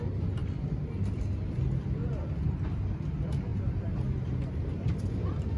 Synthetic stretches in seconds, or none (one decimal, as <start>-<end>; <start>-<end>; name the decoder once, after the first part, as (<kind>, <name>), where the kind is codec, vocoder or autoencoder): 0.0-0.4 (vocoder, BigVGAN v2); 1.5-2.0; 2.7-3.5; 4.5-5.6